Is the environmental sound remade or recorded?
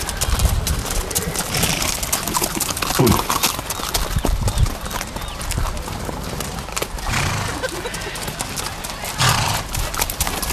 recorded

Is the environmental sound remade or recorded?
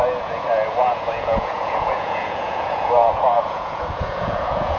remade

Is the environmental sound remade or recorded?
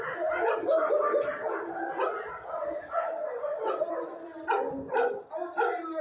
recorded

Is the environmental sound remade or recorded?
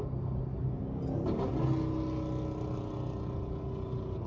recorded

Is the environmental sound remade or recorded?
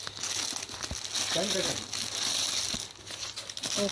recorded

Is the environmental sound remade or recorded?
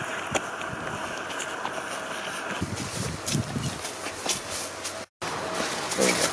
recorded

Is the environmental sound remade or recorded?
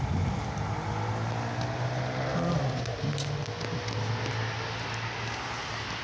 recorded